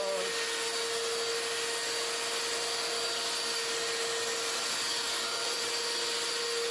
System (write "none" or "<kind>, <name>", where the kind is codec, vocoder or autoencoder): none